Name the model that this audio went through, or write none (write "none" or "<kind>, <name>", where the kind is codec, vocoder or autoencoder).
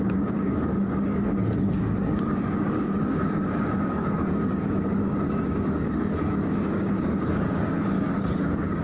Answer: codec, DAC